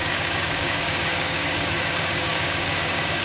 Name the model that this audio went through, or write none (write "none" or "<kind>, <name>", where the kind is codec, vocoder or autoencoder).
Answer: codec, DAC